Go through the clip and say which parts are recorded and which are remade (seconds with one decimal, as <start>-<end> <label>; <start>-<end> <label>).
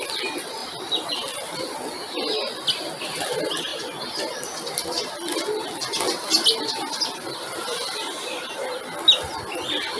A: 0.0-10.0 recorded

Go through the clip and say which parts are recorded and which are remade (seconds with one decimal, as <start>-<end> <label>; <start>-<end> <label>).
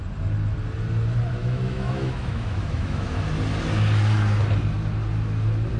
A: 0.0-1.4 recorded; 1.4-3.2 remade; 3.2-5.8 recorded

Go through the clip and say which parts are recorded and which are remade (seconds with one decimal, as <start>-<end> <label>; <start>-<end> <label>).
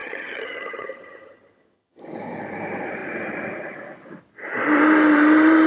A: 0.0-2.0 remade; 2.0-5.7 recorded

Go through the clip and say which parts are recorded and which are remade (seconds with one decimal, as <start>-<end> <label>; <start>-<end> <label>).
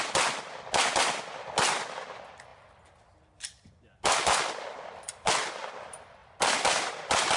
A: 0.0-7.4 recorded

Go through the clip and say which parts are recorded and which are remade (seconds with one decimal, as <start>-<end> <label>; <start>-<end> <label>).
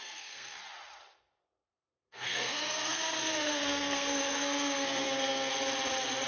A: 0.0-0.6 remade; 0.6-1.7 recorded; 1.7-5.5 remade; 5.5-6.3 recorded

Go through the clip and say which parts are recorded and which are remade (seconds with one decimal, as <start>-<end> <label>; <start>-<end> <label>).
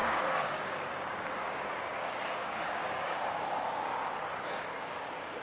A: 0.0-3.9 remade; 3.9-4.5 recorded; 4.5-5.4 remade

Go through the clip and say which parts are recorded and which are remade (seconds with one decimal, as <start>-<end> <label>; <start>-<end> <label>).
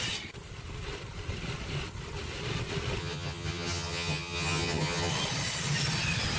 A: 0.0-3.0 recorded; 3.0-5.1 remade; 5.1-6.4 recorded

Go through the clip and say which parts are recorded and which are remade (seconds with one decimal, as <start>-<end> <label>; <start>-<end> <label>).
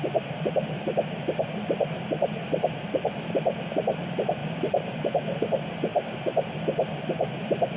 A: 0.0-4.4 recorded; 4.4-5.4 remade; 5.4-7.8 recorded